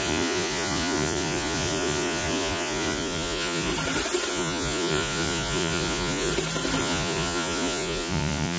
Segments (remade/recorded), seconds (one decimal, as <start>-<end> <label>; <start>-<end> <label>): 0.0-3.7 remade; 3.7-4.3 recorded; 4.3-6.3 remade; 6.3-6.8 recorded; 6.8-8.6 remade